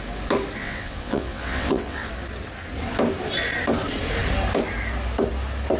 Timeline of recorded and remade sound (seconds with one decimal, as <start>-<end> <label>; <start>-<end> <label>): 0.0-0.6 recorded; 0.6-2.1 remade; 2.1-5.8 recorded